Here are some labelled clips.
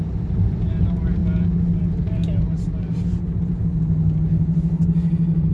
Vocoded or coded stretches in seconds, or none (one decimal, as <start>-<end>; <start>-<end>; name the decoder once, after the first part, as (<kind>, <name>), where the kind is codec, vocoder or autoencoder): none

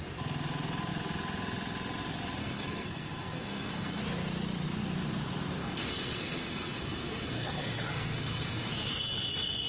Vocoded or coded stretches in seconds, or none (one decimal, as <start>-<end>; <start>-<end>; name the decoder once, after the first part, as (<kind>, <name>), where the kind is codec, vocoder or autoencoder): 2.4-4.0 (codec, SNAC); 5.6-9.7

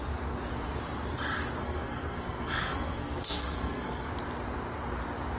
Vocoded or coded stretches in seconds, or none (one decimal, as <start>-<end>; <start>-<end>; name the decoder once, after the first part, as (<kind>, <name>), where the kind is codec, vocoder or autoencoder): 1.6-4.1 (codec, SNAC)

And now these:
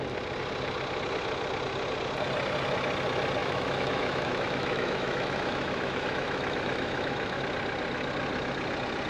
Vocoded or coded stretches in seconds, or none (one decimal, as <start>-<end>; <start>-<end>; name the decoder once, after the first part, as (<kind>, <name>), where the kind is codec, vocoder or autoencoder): 3.4-7.4 (autoencoder, DAC-VAE)

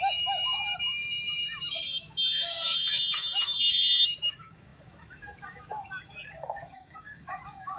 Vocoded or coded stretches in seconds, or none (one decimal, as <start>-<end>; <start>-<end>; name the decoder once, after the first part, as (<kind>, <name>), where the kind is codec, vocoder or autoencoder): 0.0-7.8 (autoencoder, DAC-VAE)

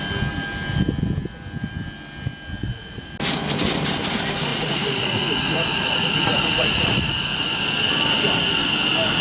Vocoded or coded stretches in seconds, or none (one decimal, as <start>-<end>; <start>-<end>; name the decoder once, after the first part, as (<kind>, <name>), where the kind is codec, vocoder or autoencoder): 2.6-3.1 (vocoder, Vocos); 4.5-7.5